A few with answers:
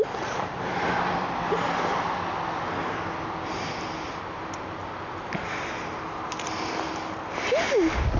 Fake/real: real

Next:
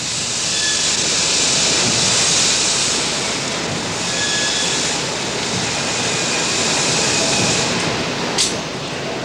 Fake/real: real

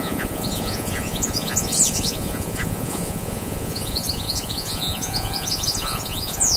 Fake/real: fake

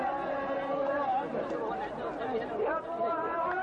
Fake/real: real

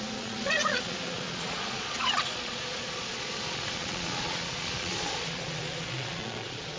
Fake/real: fake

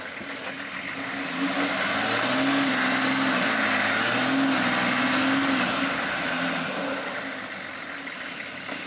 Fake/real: real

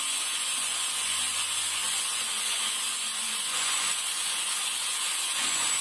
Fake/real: fake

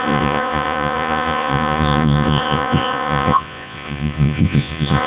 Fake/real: fake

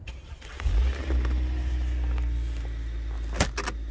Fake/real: real